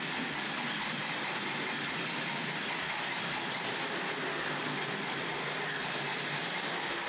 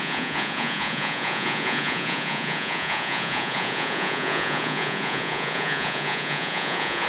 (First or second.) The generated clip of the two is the second